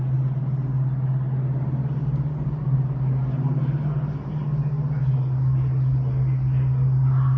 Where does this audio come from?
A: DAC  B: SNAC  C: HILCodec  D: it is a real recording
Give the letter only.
D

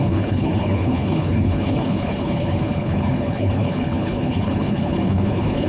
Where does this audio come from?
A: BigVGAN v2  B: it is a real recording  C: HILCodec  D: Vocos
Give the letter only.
C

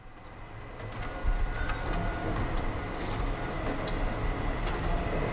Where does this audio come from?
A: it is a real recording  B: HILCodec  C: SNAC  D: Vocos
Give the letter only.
A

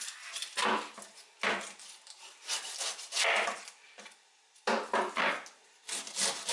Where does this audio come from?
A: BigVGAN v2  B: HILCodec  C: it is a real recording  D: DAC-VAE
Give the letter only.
C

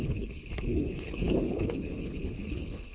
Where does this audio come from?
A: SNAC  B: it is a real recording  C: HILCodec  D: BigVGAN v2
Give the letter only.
C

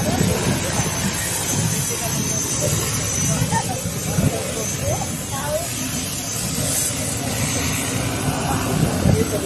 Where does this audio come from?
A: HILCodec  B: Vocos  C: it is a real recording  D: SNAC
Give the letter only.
C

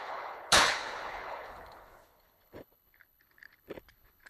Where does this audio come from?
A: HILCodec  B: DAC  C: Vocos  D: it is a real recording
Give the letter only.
A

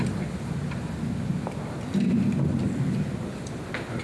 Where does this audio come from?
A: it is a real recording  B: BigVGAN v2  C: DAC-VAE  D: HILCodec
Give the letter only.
A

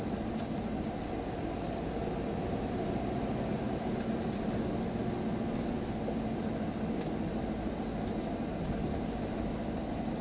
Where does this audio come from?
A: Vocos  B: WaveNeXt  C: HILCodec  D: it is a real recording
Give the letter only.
D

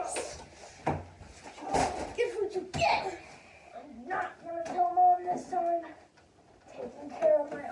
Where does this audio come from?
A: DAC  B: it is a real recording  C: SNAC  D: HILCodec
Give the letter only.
B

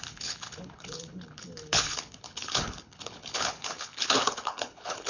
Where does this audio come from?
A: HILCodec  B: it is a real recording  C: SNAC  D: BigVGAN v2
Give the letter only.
A